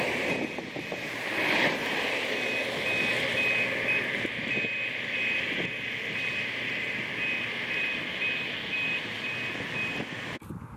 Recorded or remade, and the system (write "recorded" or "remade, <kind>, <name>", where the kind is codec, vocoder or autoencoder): recorded